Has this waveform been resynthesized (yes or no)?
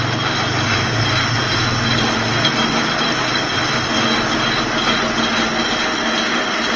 no